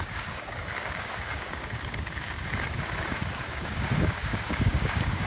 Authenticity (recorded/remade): remade